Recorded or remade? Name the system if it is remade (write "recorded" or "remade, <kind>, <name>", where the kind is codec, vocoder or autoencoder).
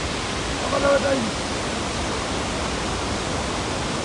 recorded